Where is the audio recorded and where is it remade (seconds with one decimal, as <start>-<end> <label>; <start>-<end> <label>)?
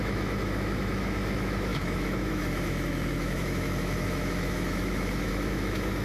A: 0.0-6.0 remade